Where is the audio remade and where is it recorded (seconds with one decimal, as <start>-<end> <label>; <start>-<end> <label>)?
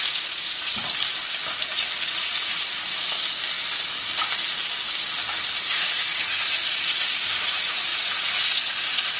0.0-0.8 remade; 0.8-2.1 recorded; 2.1-2.7 remade; 2.7-5.7 recorded; 5.7-9.2 remade